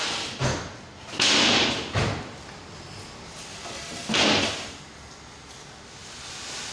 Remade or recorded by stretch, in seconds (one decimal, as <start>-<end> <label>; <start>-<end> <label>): 0.0-6.7 recorded